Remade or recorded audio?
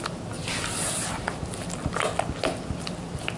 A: recorded